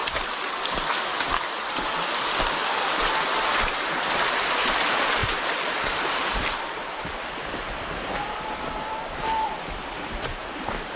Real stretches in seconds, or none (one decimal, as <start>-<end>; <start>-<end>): 0.0-3.8; 5.2-6.1